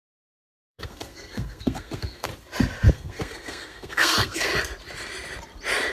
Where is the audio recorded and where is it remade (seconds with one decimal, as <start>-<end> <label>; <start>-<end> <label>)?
0.0-2.3 remade; 2.3-2.9 recorded; 2.9-4.5 remade; 4.5-5.9 recorded